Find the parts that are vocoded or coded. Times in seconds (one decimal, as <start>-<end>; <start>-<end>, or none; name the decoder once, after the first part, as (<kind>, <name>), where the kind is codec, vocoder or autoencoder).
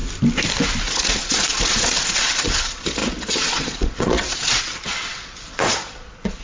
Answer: 0.8-6.4 (vocoder, Vocos)